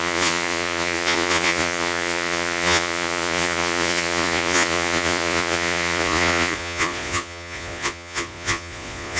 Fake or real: fake